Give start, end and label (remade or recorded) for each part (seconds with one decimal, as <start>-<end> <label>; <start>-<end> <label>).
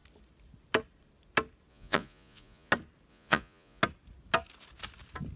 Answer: 0.0-1.7 recorded; 1.7-2.7 remade; 2.7-3.1 recorded; 3.1-3.8 remade; 3.8-5.4 recorded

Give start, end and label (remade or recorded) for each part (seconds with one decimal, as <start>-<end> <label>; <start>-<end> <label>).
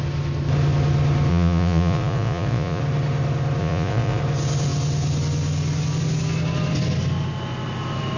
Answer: 0.0-1.3 recorded; 1.3-2.8 remade; 2.8-3.6 recorded; 3.6-4.2 remade; 4.2-8.2 recorded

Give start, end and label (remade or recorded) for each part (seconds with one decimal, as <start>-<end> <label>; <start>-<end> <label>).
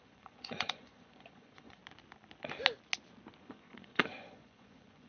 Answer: 0.0-1.8 remade; 1.8-3.4 recorded; 3.4-5.1 remade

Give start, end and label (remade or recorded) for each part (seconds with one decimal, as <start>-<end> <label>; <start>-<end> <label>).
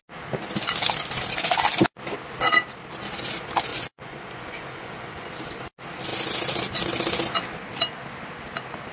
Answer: 0.0-3.7 recorded; 3.7-5.3 remade; 5.3-8.9 recorded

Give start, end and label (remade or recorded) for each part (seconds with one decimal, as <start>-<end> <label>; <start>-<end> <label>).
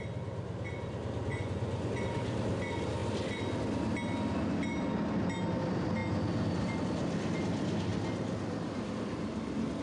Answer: 0.0-1.3 recorded; 1.3-1.9 remade; 1.9-9.8 recorded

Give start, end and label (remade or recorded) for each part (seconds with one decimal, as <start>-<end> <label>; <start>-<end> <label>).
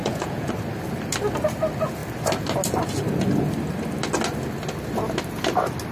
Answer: 0.0-0.5 remade; 0.5-5.9 recorded